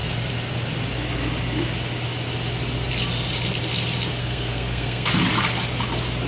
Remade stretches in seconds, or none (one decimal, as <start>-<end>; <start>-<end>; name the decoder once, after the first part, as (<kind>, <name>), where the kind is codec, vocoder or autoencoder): 4.2-5.1 (codec, SNAC)